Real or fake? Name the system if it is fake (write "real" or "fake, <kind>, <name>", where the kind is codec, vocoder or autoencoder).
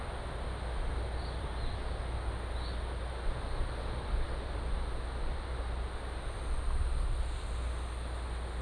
real